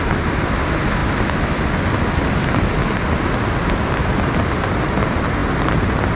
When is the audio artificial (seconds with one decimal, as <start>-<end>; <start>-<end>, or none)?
none